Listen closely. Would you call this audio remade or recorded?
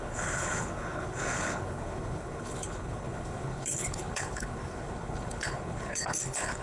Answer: remade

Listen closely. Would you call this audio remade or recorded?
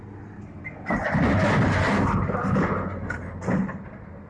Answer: recorded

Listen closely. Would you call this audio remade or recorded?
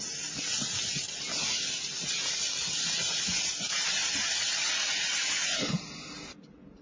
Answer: recorded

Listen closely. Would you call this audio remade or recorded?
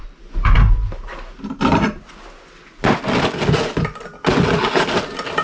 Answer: recorded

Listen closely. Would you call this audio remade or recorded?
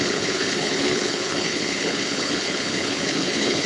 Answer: remade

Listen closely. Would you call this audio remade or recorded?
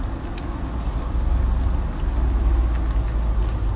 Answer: recorded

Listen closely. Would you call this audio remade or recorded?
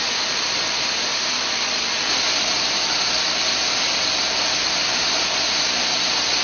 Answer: recorded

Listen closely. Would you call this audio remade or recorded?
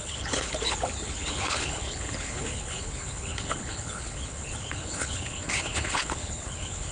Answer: remade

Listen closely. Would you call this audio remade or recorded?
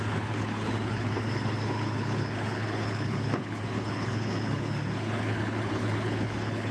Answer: remade